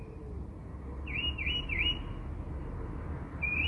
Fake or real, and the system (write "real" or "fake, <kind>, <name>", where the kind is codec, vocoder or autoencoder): real